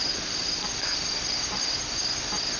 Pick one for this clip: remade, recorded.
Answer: recorded